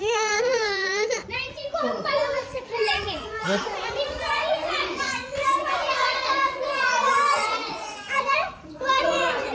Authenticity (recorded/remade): remade